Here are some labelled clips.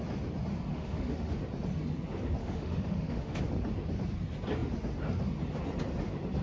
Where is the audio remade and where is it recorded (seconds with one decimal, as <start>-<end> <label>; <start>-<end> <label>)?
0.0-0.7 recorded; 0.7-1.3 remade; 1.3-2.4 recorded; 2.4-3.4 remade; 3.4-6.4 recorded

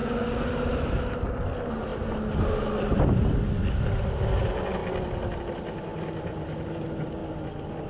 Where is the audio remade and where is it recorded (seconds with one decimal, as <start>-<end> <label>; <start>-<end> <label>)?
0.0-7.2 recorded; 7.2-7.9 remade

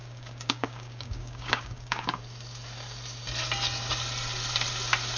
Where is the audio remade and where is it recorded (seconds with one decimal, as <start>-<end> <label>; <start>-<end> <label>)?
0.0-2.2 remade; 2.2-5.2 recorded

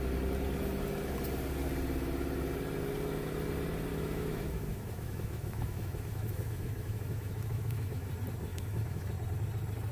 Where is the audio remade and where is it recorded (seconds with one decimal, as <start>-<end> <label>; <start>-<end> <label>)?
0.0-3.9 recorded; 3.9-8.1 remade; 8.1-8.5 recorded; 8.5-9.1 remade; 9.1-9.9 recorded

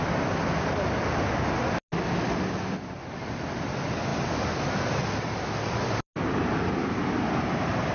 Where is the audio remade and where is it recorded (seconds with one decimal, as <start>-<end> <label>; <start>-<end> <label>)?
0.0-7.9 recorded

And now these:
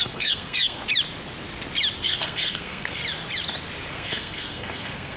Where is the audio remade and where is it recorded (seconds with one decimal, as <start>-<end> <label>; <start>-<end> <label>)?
0.0-0.8 remade; 0.8-2.0 recorded; 2.0-3.0 remade; 3.0-3.9 recorded; 3.9-5.2 remade

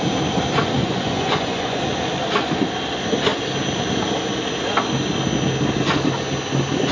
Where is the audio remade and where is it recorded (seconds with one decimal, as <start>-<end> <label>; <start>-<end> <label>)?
0.0-0.8 recorded; 0.8-1.8 remade; 1.8-6.9 recorded